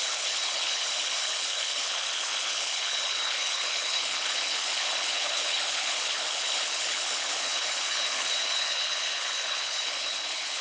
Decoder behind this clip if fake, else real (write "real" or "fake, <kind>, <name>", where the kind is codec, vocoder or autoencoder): fake, codec, HILCodec